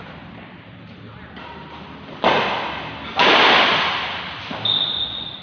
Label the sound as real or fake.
real